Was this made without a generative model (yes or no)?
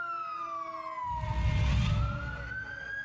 yes